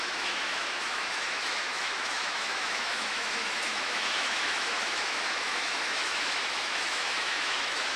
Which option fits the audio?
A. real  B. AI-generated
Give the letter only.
B